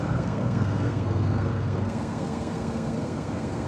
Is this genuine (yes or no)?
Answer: no